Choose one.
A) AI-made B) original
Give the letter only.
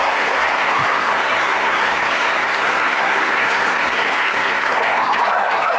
A